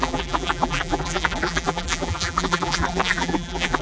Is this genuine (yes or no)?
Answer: no